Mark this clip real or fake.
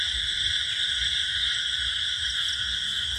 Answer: real